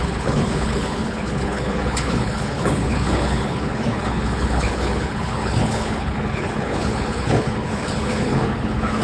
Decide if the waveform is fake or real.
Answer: fake